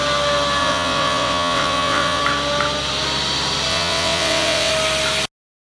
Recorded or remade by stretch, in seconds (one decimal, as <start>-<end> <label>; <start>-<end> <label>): 0.0-0.6 recorded; 0.6-2.2 remade; 2.2-3.7 recorded; 3.7-4.7 remade; 4.7-5.7 recorded